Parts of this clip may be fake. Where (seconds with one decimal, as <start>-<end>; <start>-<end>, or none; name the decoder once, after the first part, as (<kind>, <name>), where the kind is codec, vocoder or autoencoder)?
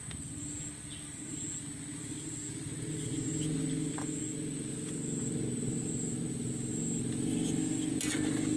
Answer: none